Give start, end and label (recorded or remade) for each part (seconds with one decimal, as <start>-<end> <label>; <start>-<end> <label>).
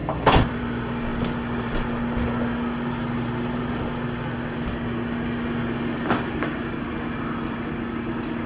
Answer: 0.0-0.6 remade; 0.6-8.5 recorded